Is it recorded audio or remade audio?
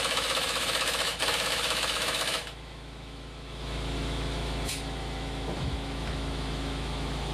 remade